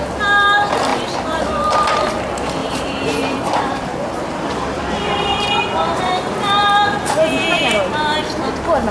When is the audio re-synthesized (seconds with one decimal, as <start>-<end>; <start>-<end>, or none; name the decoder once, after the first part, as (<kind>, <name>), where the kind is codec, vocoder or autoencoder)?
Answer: 0.9-1.4 (vocoder, BigVGAN v2); 2.6-6.0